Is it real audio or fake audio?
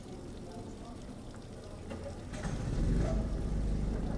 real